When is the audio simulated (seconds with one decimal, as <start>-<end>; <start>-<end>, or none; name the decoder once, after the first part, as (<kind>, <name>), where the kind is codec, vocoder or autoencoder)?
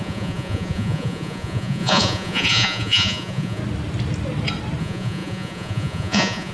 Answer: 0.0-3.6 (vocoder, Vocos); 4.8-6.5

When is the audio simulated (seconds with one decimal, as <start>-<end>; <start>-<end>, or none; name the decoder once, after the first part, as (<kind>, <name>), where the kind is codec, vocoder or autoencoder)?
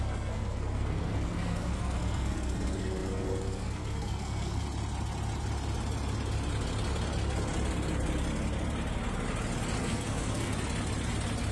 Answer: 0.0-4.6 (codec, SNAC); 9.8-10.5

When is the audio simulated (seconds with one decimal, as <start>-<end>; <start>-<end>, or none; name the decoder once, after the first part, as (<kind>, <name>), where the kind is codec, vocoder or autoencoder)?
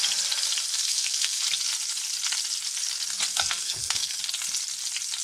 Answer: 0.7-1.4 (codec, SNAC); 3.3-4.2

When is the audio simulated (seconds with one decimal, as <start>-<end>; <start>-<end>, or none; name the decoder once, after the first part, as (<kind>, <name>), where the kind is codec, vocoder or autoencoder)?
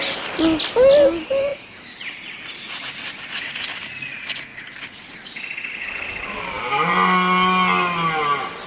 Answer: 1.5-2.4 (vocoder, BigVGAN v2)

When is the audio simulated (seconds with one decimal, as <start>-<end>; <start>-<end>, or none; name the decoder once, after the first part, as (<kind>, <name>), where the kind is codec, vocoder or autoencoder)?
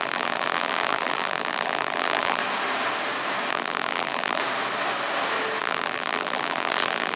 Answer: 0.0-2.4 (vocoder, BigVGAN v2); 3.5-4.4; 5.6-7.2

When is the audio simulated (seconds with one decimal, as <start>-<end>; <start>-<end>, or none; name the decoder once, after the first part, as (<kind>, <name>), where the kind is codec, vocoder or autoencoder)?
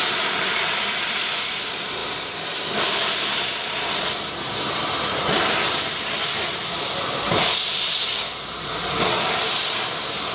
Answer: 0.0-10.3 (vocoder, BigVGAN v2)